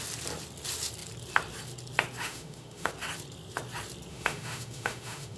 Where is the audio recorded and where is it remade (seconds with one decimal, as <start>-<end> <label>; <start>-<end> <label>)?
0.0-2.2 recorded; 2.2-2.9 remade; 2.9-4.1 recorded; 4.1-5.4 remade